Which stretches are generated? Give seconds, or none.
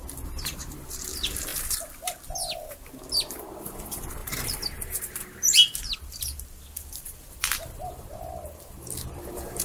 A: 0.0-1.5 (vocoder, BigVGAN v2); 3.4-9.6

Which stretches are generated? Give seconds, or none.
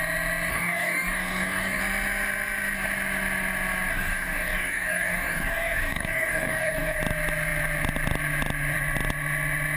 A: 0.5-1.8 (codec, DAC); 3.9-7.0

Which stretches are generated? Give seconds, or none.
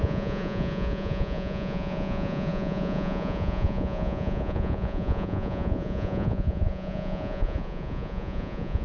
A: 0.0-8.8 (vocoder, Vocos)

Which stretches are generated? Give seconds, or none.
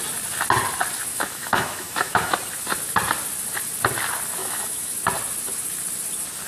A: 1.1-2.3 (autoencoder, DAC-VAE); 4.4-4.9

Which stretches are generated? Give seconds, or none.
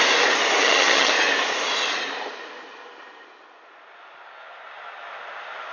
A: 0.6-1.1 (vocoder, HiFi-GAN)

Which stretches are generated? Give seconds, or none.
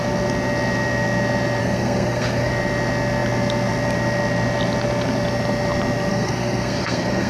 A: 1.6-2.5 (codec, SNAC); 6.1-7.3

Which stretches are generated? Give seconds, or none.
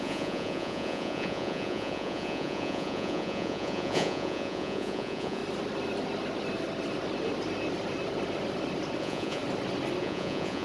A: 0.0-5.4 (vocoder, Vocos); 9.0-9.4; 10.0-10.6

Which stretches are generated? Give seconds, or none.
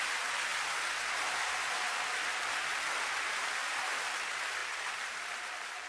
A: 3.6-4.1 (vocoder, BigVGAN v2); 4.6-5.9